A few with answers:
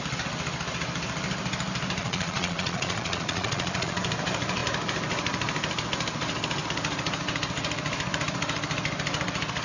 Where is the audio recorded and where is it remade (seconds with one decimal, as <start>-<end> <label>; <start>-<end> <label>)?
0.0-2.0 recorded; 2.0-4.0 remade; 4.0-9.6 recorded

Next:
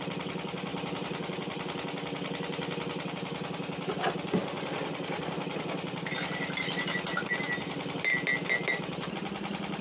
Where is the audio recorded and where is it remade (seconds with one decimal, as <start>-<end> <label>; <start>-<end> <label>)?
0.0-9.8 recorded

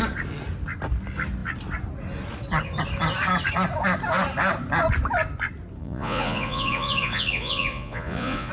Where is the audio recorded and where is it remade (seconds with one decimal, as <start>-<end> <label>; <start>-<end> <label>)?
0.0-5.8 recorded; 5.8-8.5 remade

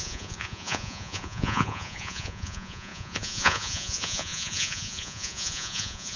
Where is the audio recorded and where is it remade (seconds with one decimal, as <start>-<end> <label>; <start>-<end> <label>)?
0.0-6.2 remade

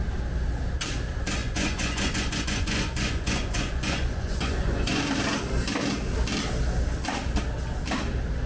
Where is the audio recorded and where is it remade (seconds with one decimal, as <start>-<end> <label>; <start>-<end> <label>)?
0.0-1.4 recorded; 1.4-5.0 remade; 5.0-8.5 recorded